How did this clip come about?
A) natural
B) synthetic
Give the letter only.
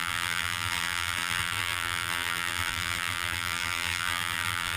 B